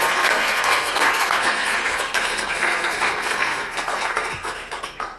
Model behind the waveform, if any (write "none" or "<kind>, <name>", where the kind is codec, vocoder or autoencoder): codec, SNAC